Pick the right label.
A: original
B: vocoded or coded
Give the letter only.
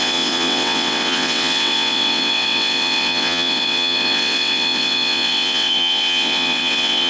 B